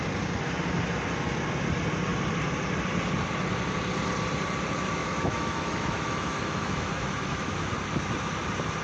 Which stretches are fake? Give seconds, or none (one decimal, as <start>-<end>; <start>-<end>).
5.0-7.7